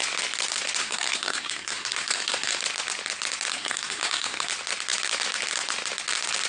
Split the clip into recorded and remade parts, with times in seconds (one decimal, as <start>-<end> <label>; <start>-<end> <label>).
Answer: 0.0-0.8 recorded; 0.8-2.6 remade; 2.6-3.5 recorded; 3.5-4.5 remade; 4.5-6.5 recorded